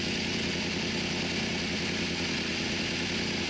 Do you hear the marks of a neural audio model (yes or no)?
no